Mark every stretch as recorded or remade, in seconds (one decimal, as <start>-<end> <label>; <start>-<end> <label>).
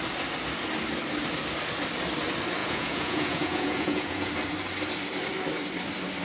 0.0-2.6 recorded; 2.6-4.3 remade; 4.3-6.2 recorded